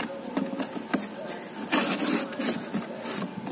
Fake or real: real